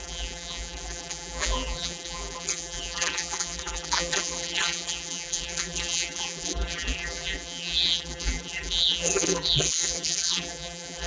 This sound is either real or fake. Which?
fake